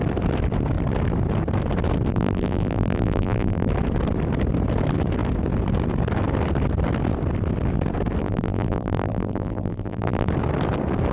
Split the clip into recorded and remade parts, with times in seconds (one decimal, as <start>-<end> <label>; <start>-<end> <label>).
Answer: 0.0-2.1 recorded; 2.1-3.7 remade; 3.7-8.2 recorded; 8.2-10.3 remade; 10.3-11.1 recorded